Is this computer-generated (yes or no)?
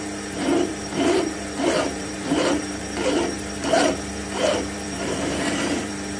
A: yes